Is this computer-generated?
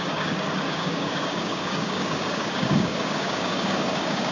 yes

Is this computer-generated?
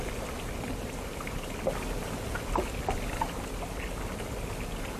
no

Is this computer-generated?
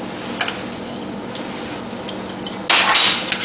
no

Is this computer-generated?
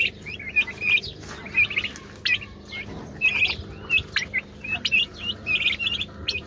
no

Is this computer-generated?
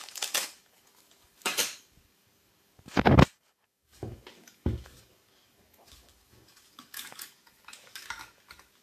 yes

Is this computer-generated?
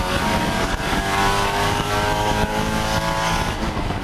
yes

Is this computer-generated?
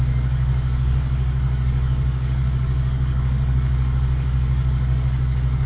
yes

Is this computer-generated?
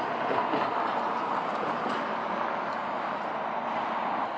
no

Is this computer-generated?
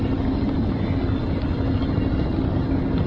no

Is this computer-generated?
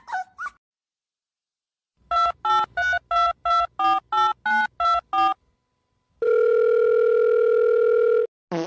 no